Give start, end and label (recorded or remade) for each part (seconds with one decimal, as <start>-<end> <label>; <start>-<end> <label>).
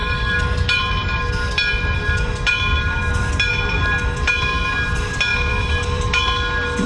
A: 0.0-0.8 remade; 0.8-5.3 recorded; 5.3-6.2 remade; 6.2-6.9 recorded